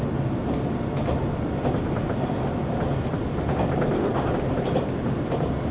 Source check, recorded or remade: recorded